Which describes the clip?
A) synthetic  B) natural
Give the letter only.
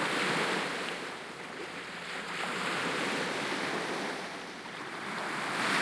B